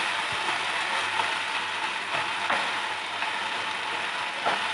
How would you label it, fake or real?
real